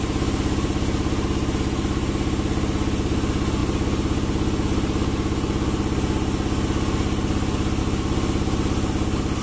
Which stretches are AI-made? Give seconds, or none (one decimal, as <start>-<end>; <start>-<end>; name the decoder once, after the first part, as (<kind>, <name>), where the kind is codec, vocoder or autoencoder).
none